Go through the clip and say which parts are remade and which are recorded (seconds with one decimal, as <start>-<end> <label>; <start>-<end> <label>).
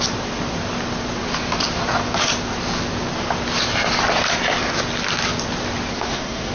0.0-5.9 recorded; 5.9-6.5 remade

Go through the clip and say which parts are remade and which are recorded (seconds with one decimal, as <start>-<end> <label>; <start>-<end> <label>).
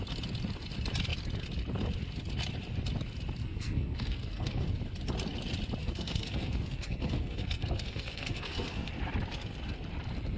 0.0-3.4 recorded; 3.4-4.7 remade; 4.7-5.8 recorded; 5.8-8.9 remade; 8.9-10.4 recorded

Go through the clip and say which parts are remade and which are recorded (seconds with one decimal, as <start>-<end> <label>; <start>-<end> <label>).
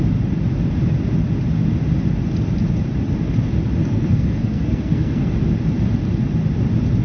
0.0-3.8 recorded; 3.8-5.3 remade; 5.3-7.0 recorded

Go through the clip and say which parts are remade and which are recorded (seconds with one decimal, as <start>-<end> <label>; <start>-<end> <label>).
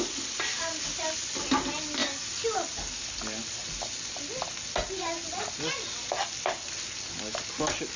0.0-8.0 recorded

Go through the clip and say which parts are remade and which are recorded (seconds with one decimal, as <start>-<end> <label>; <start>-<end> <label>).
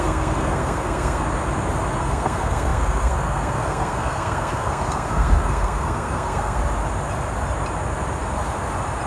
0.0-1.2 remade; 1.2-2.0 recorded; 2.0-6.6 remade; 6.6-9.1 recorded